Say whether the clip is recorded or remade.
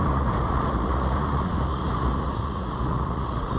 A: remade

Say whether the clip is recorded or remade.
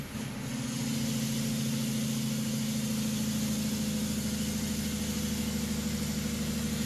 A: recorded